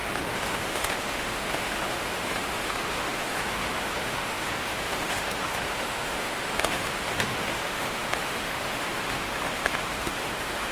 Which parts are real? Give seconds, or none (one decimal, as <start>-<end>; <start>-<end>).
none